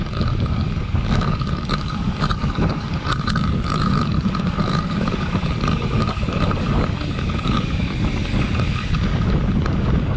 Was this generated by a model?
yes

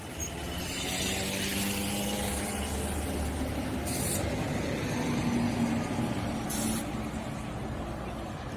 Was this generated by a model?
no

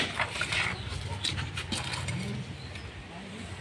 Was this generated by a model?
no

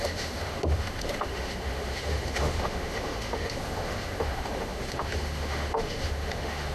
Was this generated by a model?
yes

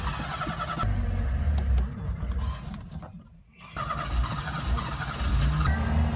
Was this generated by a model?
no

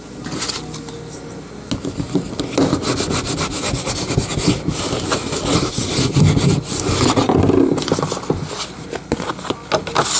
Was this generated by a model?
no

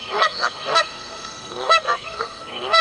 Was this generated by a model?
yes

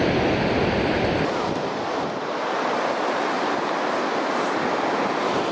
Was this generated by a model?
no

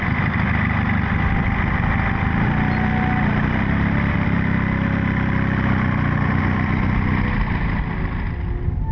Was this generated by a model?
no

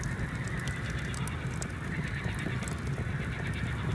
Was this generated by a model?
no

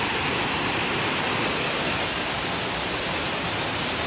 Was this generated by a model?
no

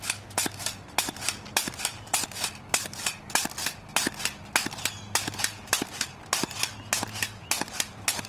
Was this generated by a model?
no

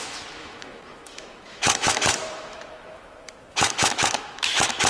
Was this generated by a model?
yes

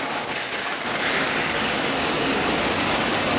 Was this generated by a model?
yes